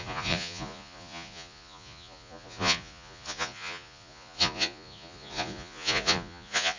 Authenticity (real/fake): fake